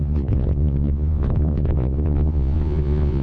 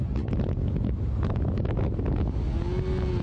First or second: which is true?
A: second